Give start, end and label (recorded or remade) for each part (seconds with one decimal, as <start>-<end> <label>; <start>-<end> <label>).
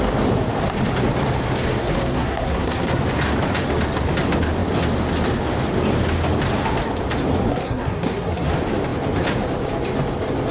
0.0-1.8 recorded; 1.8-3.0 remade; 3.0-7.5 recorded; 7.5-8.5 remade; 8.5-10.5 recorded